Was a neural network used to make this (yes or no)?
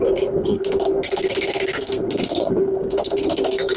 yes